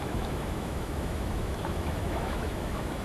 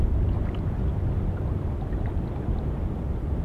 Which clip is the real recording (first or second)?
second